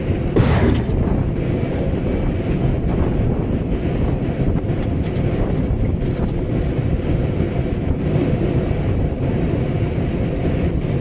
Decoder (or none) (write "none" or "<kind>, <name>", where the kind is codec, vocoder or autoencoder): none